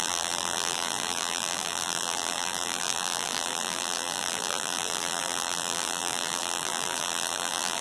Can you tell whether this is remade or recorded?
remade